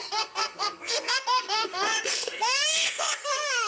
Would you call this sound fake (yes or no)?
yes